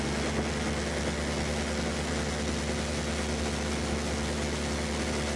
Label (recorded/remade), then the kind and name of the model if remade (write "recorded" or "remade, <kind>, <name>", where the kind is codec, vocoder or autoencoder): recorded